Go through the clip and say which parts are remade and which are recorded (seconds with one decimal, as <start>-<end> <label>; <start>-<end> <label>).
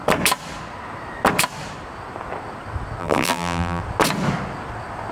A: 0.0-3.0 recorded; 3.0-3.8 remade; 3.8-5.1 recorded